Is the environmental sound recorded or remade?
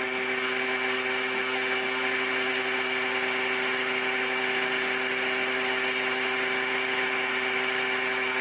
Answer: recorded